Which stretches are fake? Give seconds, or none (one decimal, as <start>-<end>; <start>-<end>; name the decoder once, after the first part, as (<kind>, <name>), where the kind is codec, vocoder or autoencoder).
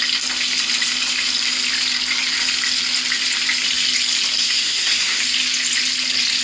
4.4-5.2 (codec, SNAC)